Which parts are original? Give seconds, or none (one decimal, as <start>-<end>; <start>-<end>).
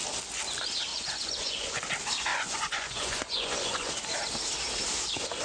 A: 0.0-0.9; 1.8-2.3; 3.9-5.4